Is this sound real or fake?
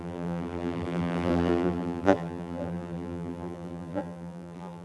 fake